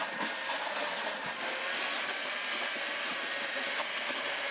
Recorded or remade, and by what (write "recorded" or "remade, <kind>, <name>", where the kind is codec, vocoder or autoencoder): recorded